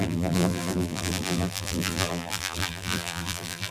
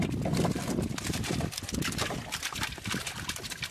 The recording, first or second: second